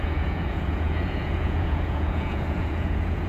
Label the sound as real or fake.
fake